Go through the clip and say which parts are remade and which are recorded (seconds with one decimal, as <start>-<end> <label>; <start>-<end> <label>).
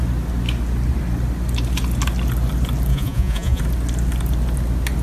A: 0.0-2.9 recorded; 2.9-3.6 remade; 3.6-5.0 recorded